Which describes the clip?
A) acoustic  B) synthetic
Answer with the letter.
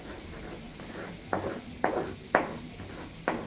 A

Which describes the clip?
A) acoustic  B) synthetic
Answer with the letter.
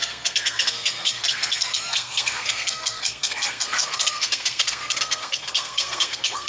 B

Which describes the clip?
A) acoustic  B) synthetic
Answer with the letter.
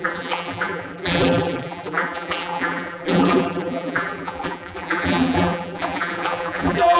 B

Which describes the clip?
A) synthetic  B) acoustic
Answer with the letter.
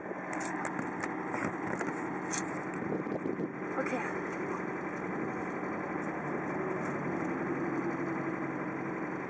B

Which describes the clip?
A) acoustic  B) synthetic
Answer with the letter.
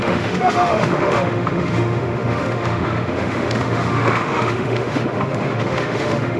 B